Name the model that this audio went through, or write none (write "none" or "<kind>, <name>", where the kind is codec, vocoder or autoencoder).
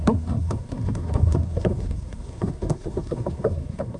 codec, SNAC